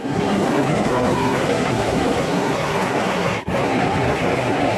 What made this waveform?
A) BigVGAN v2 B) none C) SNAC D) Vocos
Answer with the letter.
C